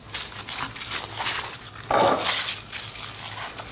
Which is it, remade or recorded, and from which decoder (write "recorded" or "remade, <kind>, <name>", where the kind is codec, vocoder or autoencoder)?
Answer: recorded